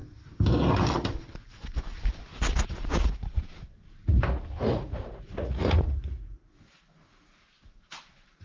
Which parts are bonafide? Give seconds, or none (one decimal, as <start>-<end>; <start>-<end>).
0.0-2.3; 3.7-4.7; 7.3-8.4